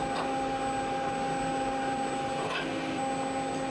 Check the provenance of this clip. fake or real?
real